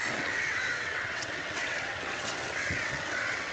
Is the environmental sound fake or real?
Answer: fake